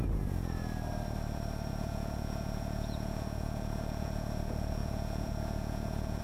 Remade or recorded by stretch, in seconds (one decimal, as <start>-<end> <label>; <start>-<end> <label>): 0.0-0.6 remade; 0.6-1.7 recorded; 1.7-6.2 remade